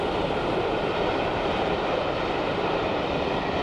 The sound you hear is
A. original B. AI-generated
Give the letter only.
B